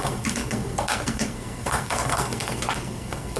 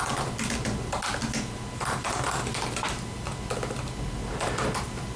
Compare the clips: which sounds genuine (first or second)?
second